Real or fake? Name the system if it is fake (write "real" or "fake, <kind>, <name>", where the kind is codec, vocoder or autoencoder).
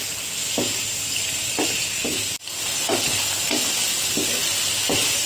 real